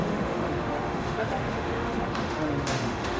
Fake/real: fake